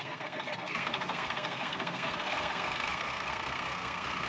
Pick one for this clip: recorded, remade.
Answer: remade